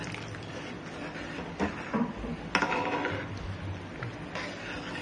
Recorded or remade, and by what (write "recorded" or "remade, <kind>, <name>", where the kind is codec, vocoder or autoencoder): recorded